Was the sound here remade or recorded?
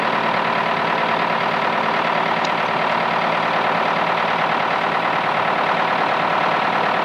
recorded